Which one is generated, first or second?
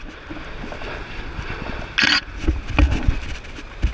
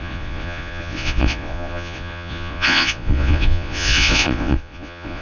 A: second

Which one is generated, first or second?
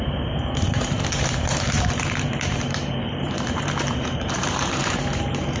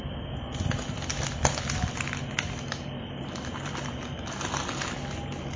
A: first